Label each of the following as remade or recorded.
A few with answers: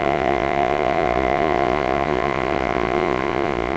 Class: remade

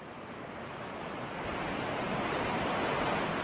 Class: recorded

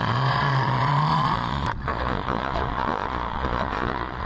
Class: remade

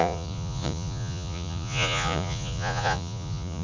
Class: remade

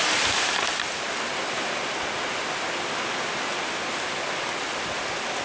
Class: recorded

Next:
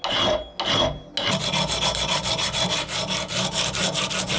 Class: recorded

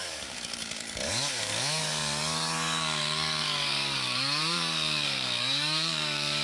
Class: remade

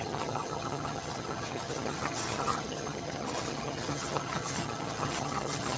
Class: remade